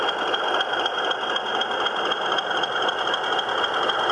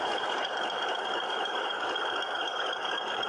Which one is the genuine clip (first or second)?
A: first